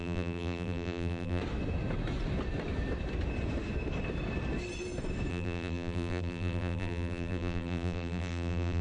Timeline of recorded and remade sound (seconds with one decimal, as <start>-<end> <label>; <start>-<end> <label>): 0.0-1.4 remade; 1.4-5.3 recorded; 5.3-8.8 remade

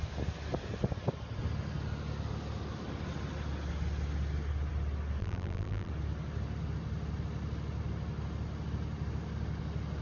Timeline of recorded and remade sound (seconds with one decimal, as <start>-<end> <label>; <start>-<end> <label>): 0.0-5.2 recorded; 5.2-5.9 remade; 5.9-10.0 recorded

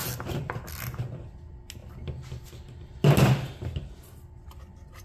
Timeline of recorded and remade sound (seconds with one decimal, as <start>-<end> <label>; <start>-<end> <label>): 0.0-5.0 recorded